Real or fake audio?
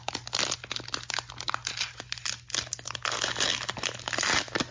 real